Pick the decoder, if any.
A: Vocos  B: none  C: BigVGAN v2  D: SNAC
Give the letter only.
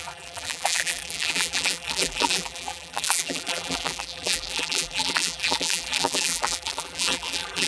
C